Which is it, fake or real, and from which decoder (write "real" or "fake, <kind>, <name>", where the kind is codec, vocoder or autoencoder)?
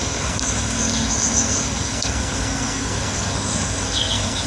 fake, codec, SNAC